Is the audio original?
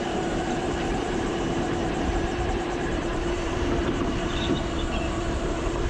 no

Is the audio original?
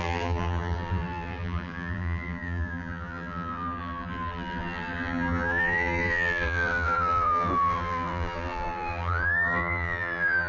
no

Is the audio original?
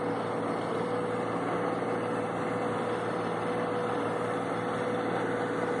yes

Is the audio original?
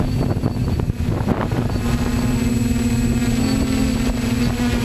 yes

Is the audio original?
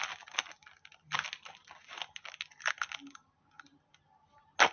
yes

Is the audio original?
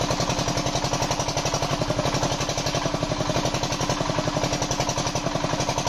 yes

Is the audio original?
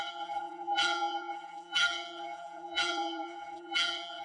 no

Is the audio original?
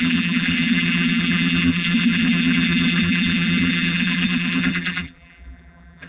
no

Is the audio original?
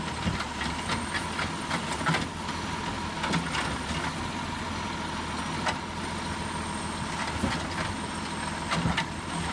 yes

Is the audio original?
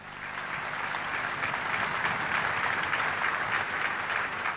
no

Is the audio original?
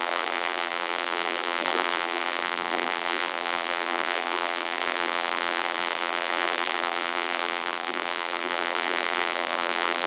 no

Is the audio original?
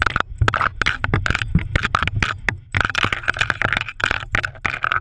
yes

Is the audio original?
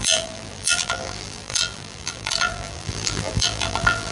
no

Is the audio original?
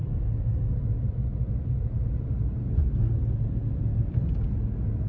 yes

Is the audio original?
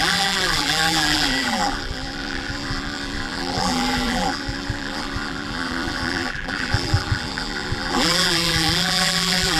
no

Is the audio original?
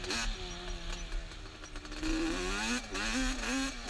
yes